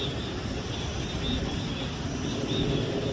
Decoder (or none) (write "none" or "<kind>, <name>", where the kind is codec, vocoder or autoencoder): none